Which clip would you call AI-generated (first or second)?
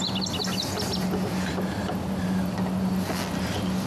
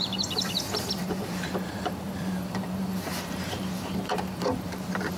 second